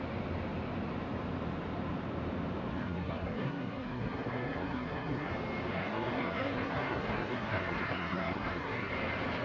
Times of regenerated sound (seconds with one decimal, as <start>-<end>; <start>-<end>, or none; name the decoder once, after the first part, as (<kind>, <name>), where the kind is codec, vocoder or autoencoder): 2.7-5.3 (codec, SNAC); 5.7-8.9